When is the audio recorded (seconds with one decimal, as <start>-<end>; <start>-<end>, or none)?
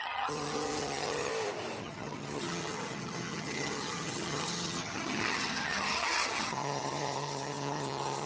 1.3-1.8